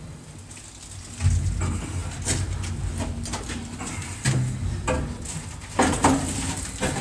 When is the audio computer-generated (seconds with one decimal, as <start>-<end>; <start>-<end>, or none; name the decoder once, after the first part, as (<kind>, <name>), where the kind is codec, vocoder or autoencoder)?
none